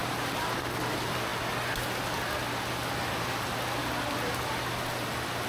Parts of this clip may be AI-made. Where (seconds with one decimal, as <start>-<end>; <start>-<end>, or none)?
0.0-0.6